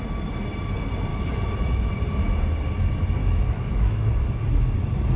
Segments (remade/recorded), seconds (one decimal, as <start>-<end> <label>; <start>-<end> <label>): 0.0-1.1 recorded; 1.1-1.9 remade; 1.9-3.2 recorded; 3.2-4.2 remade; 4.2-5.2 recorded

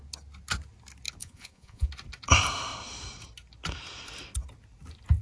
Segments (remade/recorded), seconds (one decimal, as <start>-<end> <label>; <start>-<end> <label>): 0.0-1.2 recorded; 1.2-1.9 remade; 1.9-5.2 recorded